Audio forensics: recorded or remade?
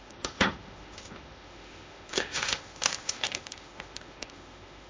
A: remade